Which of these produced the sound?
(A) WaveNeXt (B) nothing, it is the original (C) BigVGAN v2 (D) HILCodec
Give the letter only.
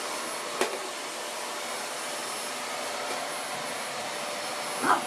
B